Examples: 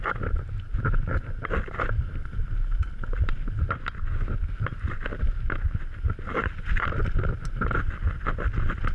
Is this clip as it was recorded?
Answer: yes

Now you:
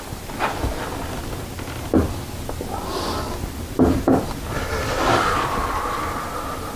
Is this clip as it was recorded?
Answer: yes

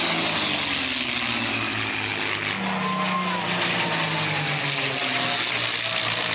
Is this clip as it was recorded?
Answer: yes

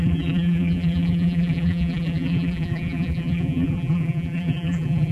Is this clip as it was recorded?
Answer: no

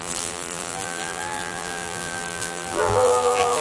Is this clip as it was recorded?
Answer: no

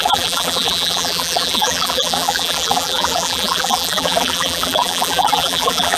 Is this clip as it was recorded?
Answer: no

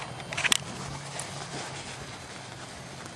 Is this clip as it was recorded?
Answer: yes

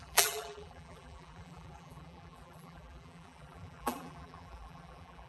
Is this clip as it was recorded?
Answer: no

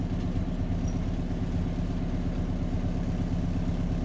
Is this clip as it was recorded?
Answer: yes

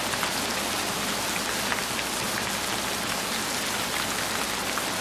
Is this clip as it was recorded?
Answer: yes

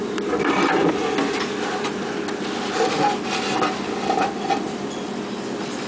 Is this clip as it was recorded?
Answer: yes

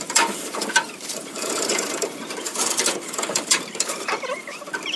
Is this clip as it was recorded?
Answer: no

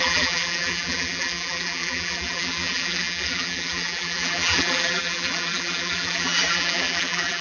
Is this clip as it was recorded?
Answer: no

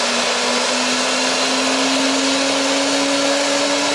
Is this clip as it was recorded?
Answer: yes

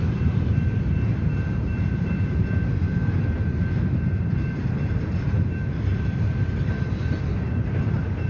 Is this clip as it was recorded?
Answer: no